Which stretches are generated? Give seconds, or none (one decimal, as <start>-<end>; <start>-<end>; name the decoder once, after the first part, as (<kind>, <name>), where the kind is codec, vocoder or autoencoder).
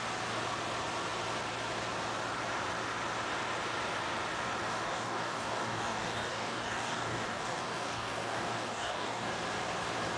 4.7-9.3 (codec, DAC)